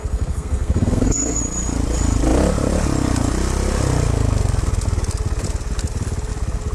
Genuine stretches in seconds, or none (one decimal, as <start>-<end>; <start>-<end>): 1.4-6.7